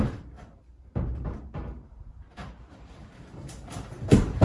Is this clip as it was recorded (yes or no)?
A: no